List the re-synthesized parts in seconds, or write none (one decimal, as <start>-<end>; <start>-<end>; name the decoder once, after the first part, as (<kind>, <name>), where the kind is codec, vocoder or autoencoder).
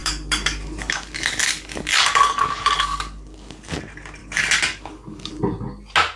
0.0-3.7 (codec, DAC); 4.2-5.3